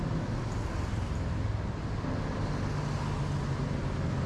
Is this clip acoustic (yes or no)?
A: yes